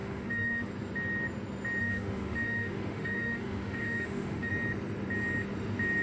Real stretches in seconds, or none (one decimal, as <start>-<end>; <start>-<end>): 0.7-1.8; 4.5-6.0